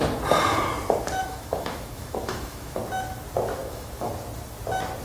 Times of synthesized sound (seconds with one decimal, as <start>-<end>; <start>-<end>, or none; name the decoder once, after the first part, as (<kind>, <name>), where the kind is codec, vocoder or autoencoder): 1.2-2.8 (autoencoder, DAC-VAE); 3.6-4.1